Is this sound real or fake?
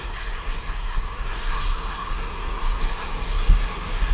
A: fake